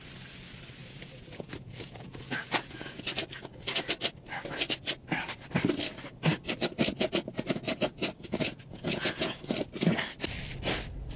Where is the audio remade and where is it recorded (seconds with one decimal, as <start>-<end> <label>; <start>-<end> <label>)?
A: 0.0-0.8 recorded; 0.8-3.0 remade; 3.0-6.6 recorded; 6.6-9.4 remade; 9.4-11.2 recorded